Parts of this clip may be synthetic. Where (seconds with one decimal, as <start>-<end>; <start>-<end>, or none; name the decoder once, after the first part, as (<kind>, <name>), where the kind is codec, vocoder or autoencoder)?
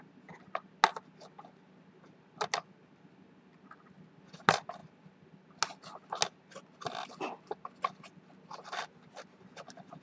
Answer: none